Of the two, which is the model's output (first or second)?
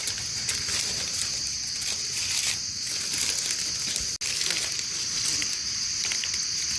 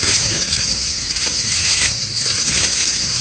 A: second